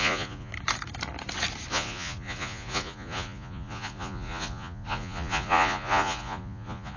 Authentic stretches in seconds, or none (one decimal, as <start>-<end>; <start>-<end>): 0.5-1.7